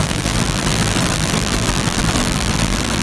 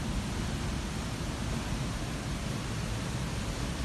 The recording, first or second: second